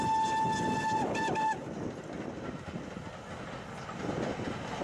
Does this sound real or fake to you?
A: real